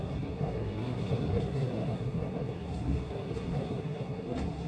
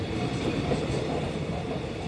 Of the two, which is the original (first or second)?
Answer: second